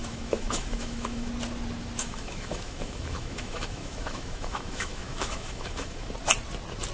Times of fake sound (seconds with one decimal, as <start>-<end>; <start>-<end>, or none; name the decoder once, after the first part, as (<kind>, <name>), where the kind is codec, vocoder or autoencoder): 0.0-1.3 (autoencoder, DAC-VAE); 2.0-6.1